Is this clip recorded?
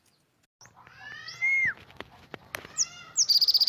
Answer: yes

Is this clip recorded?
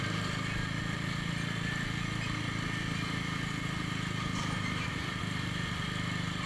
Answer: yes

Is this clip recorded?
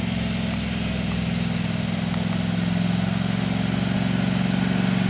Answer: yes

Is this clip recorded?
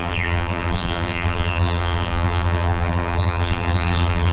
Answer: no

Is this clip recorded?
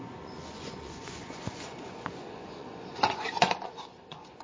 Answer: no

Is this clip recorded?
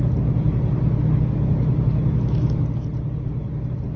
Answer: yes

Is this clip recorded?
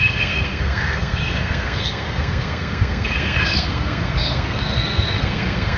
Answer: no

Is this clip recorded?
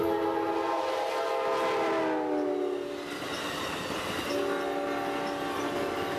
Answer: yes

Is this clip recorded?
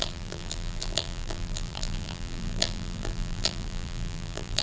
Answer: no